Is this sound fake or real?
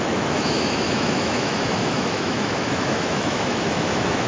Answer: fake